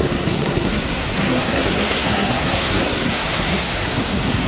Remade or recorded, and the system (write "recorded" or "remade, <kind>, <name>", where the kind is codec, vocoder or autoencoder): remade, codec, SNAC